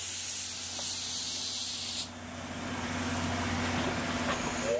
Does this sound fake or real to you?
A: real